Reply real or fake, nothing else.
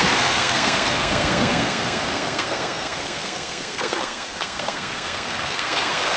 fake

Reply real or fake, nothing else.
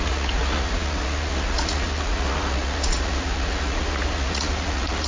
fake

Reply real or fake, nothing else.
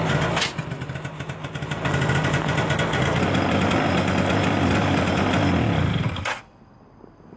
real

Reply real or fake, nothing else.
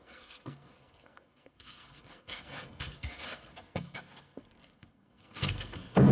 fake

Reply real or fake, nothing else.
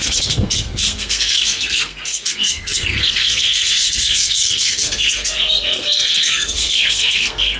fake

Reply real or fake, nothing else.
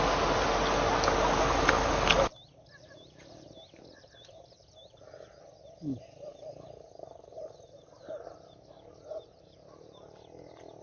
real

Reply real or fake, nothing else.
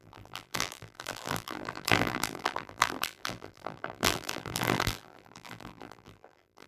fake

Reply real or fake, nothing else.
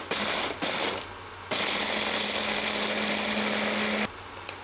real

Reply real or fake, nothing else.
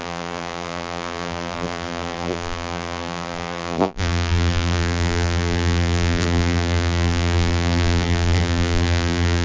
fake